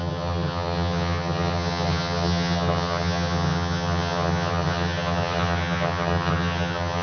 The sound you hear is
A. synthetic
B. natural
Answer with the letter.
A